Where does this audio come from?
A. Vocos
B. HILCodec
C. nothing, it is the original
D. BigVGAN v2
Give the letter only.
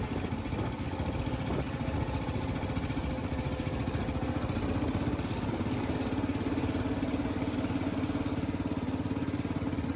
C